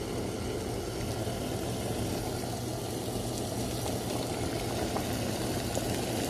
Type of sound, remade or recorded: recorded